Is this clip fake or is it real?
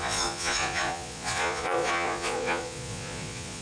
fake